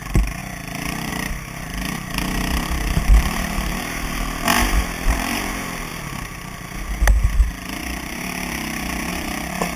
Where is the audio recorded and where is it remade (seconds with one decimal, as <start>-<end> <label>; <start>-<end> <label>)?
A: 0.0-0.4 remade; 0.4-1.1 recorded; 1.1-1.7 remade; 1.7-2.9 recorded; 2.9-5.9 remade; 5.9-9.1 recorded; 9.1-9.8 remade